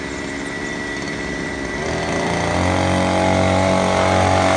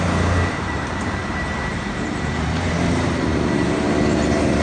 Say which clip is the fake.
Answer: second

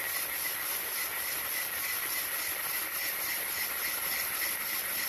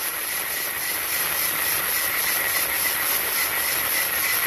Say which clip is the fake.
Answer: first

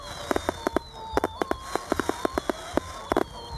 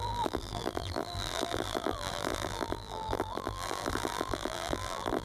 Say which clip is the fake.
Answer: second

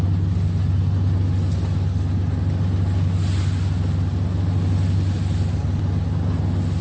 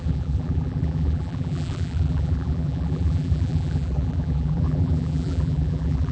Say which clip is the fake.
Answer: second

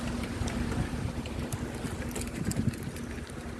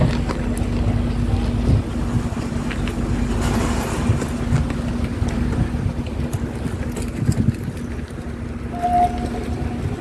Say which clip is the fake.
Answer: first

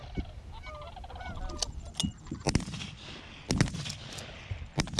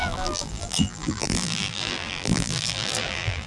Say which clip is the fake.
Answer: second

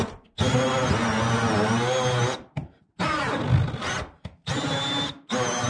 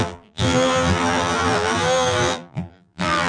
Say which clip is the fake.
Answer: second